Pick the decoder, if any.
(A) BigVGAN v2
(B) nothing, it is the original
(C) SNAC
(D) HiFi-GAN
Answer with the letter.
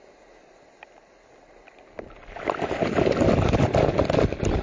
B